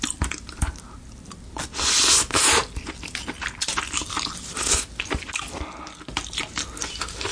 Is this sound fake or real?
real